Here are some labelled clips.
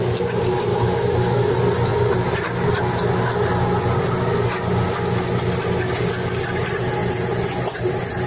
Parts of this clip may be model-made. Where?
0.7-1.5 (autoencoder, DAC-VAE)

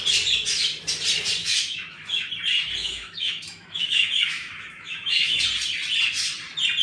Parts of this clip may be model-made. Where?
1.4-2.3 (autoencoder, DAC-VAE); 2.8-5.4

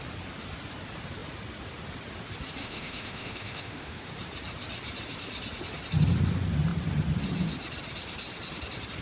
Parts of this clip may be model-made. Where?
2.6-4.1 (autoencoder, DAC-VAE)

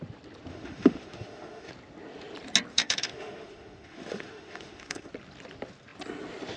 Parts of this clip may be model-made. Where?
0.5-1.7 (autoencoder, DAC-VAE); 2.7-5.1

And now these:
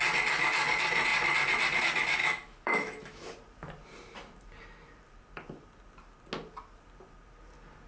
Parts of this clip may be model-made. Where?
2.2-3.3 (autoencoder, DAC-VAE)

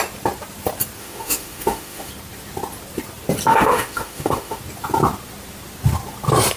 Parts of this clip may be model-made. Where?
1.0-2.1 (autoencoder, DAC-VAE); 3.5-4.6